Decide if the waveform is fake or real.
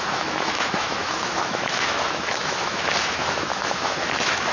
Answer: fake